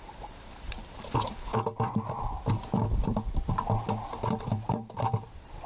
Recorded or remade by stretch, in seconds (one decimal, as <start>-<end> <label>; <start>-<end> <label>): 0.0-1.5 remade; 1.5-4.4 recorded; 4.4-5.7 remade